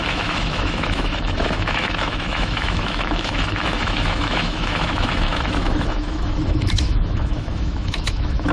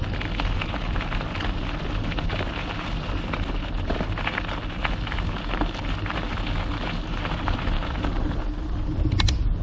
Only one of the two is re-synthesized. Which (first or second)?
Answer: first